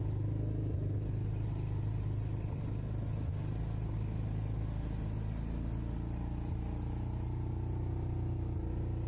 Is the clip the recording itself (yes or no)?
yes